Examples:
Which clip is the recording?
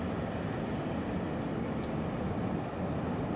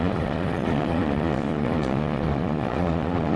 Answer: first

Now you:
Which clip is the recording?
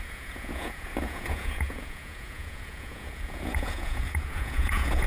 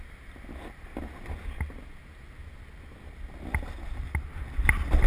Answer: second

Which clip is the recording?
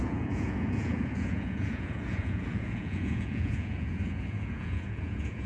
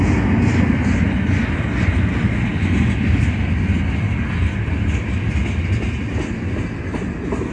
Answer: second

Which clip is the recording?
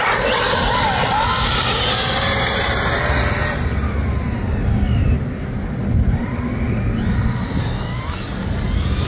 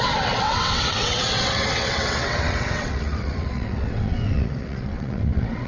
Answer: first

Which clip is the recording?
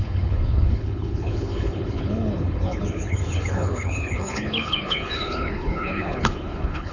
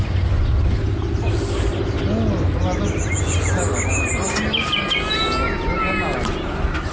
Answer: second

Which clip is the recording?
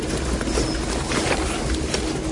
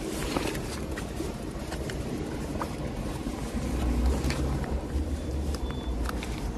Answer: first